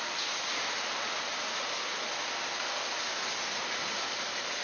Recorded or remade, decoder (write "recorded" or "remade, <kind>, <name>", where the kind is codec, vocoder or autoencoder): recorded